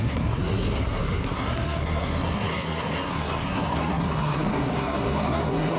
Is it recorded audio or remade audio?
remade